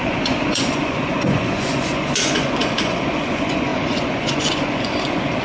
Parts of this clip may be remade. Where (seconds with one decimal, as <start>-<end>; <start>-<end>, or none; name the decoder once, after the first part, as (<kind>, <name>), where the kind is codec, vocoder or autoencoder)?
0.0-5.4 (vocoder, Vocos)